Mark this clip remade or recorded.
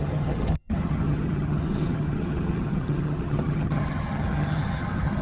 remade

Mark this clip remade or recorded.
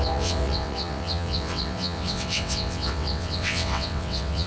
remade